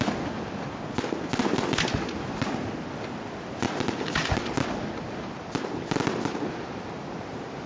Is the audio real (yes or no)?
yes